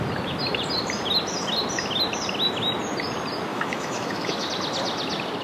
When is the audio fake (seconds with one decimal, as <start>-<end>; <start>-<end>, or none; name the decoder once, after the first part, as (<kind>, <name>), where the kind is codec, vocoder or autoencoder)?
3.5-4.5 (autoencoder, DAC-VAE)